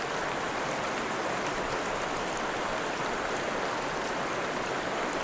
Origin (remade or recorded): recorded